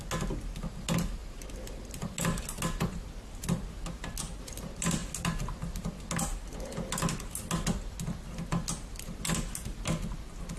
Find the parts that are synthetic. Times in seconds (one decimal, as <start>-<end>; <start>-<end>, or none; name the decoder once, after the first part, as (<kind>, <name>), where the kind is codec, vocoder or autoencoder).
none